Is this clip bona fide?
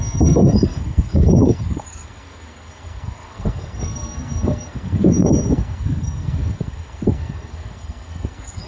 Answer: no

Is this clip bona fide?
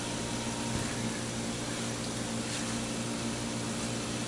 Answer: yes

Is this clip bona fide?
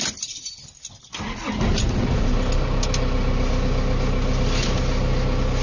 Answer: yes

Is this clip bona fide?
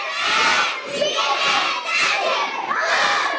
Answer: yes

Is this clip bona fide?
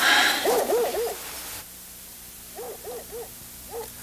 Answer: yes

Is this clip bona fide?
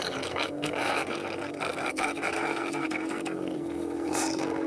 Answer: no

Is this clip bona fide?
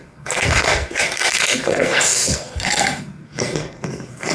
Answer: no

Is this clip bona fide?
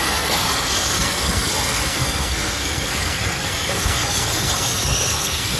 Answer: no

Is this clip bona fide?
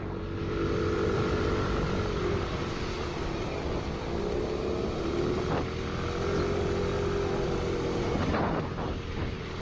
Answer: yes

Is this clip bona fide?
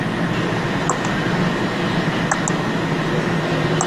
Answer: yes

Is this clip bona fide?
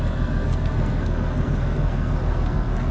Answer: no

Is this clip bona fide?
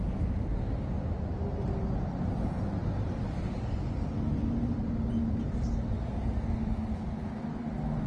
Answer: yes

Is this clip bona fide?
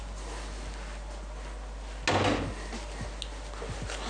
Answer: yes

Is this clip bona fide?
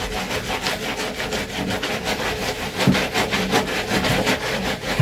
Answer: yes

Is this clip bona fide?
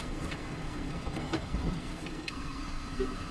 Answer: no